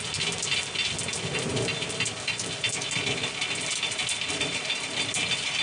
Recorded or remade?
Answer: recorded